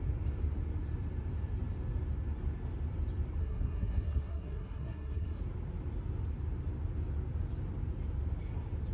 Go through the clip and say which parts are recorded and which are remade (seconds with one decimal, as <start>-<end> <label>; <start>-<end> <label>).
0.0-3.4 recorded; 3.4-5.4 remade; 5.4-8.9 recorded